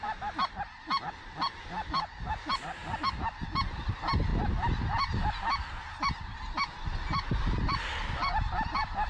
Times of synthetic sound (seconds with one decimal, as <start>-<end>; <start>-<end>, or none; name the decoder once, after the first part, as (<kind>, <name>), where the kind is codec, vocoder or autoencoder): none